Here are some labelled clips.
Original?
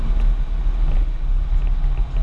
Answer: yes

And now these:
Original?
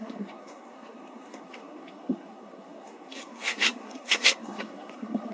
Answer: no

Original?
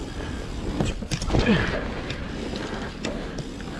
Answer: yes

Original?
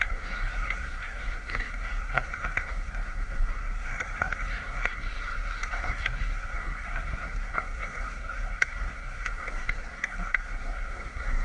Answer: no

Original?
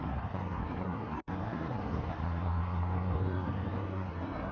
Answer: no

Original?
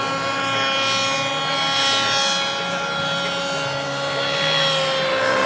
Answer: yes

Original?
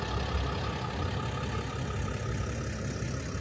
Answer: yes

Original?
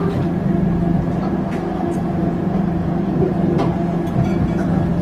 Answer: yes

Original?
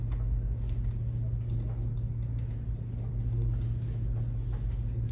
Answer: yes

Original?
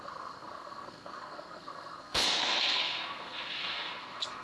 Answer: no